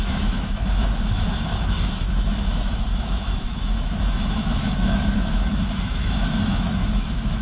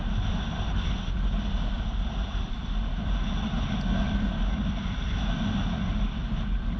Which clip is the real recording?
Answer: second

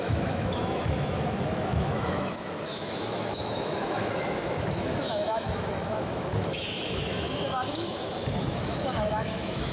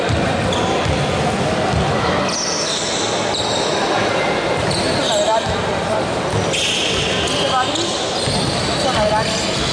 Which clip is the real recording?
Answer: second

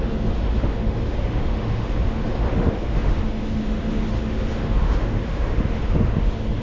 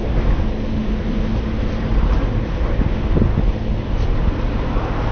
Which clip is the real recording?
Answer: second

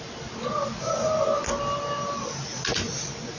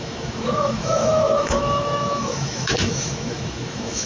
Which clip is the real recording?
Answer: first